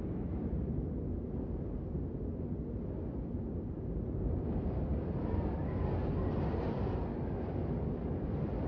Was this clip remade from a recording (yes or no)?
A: no